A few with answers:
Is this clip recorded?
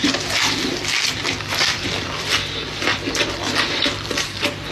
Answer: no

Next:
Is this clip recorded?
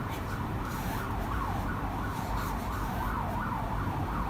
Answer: no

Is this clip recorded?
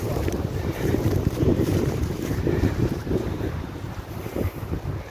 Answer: no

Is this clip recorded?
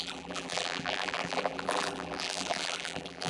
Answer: no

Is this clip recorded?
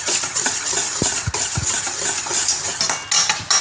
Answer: yes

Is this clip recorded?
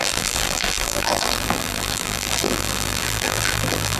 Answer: no